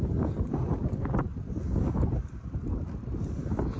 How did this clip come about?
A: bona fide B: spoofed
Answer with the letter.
A